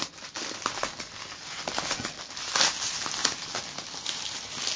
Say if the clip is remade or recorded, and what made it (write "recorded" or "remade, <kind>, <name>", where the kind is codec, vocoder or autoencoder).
recorded